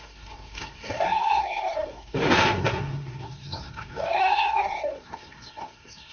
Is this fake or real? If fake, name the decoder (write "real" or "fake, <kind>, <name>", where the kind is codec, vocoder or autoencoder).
fake, codec, SNAC